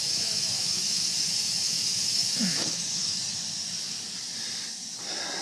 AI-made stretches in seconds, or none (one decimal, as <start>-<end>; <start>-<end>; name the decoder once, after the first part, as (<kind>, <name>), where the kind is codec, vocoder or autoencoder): 0.0-3.2 (autoencoder, DAC-VAE)